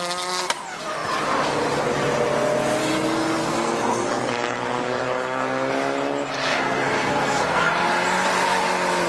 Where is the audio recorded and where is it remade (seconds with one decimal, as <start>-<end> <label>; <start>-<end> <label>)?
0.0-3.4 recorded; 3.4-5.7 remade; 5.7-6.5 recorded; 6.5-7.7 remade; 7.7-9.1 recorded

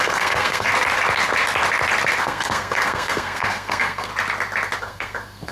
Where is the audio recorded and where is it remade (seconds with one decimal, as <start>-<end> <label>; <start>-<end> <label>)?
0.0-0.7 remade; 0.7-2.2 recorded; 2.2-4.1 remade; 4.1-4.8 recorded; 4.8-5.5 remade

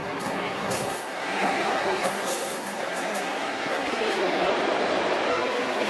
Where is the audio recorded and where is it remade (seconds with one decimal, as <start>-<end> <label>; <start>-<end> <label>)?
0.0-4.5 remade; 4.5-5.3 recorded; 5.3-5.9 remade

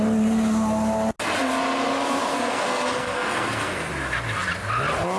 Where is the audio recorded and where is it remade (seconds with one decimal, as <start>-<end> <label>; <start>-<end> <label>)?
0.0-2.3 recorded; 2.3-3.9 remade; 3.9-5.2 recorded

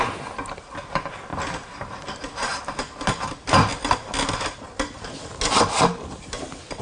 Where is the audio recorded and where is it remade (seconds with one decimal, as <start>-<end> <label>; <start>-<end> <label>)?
0.0-6.8 recorded

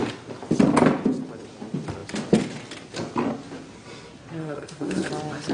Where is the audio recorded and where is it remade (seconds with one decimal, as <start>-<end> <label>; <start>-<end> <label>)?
0.0-4.4 recorded; 4.4-5.1 remade; 5.1-5.5 recorded

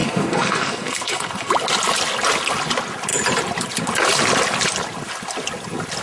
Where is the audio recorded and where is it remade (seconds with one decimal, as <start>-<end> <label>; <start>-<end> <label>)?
0.0-1.5 remade; 1.5-6.0 recorded

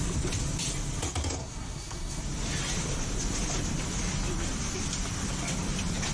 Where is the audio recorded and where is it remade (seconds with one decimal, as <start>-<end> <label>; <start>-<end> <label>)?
0.0-1.4 recorded; 1.4-2.2 remade; 2.2-6.1 recorded